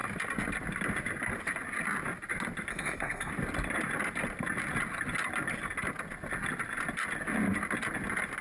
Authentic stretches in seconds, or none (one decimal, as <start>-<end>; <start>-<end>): 0.0-2.7; 3.3-8.4